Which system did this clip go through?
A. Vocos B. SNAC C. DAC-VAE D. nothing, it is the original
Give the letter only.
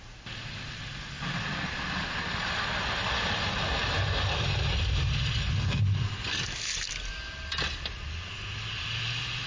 D